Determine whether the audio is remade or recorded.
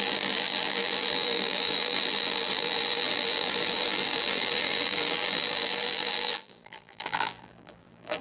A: remade